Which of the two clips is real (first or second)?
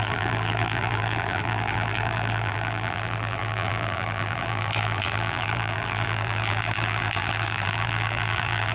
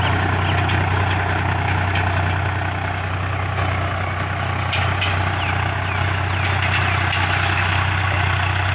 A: second